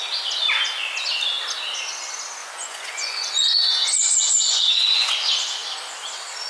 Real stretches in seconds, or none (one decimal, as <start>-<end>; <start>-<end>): 0.0-2.4; 5.1-6.5